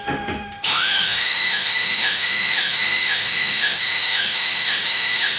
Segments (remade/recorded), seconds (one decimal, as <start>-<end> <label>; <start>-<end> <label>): 0.0-5.4 remade